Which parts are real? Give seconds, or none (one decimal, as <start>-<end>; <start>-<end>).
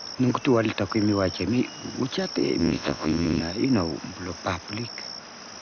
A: 0.0-2.6; 3.4-5.6